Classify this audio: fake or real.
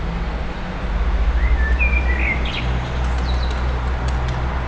real